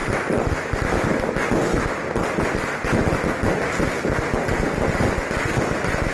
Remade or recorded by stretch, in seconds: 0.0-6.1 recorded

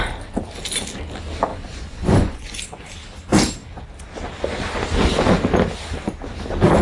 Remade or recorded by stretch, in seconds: 0.0-1.5 recorded; 1.5-2.6 remade; 2.6-6.8 recorded

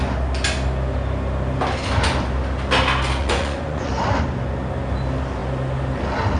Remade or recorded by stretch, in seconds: 0.0-3.2 recorded; 3.2-3.9 remade; 3.9-6.4 recorded

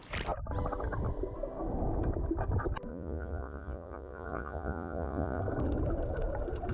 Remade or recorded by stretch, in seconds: 0.0-2.9 recorded; 2.9-5.4 remade; 5.4-6.7 recorded

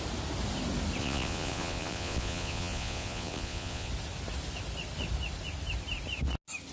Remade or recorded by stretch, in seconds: 0.0-1.0 recorded; 1.0-3.9 remade; 3.9-6.7 recorded

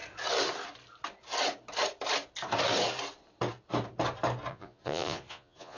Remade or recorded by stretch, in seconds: 0.0-4.5 recorded; 4.5-5.8 remade